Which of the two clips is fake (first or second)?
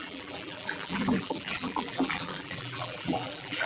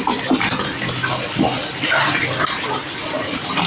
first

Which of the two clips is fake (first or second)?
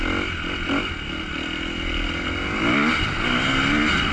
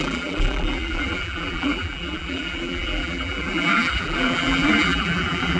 second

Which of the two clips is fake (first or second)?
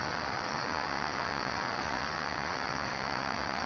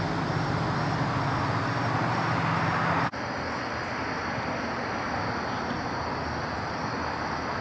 first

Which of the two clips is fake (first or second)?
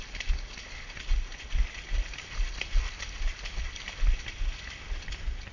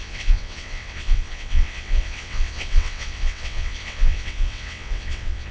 second